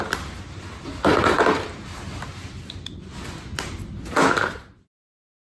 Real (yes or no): yes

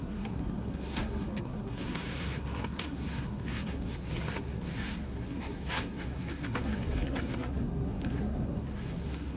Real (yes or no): no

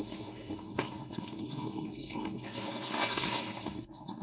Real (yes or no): no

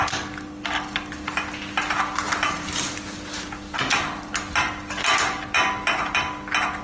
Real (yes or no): yes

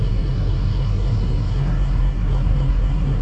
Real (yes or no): no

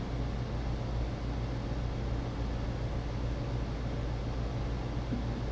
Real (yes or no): yes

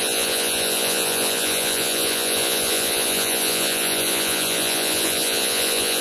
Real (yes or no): no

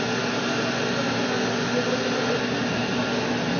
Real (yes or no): yes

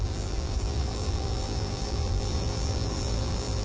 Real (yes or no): no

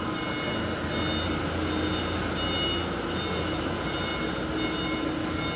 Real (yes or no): yes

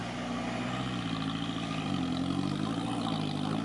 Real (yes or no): yes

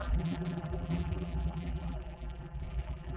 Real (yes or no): no